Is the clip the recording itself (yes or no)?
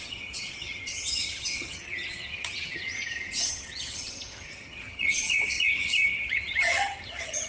no